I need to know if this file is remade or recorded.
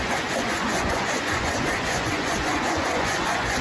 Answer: remade